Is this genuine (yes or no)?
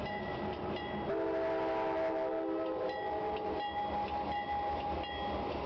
yes